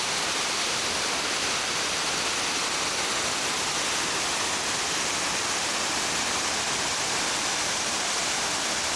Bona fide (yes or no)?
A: yes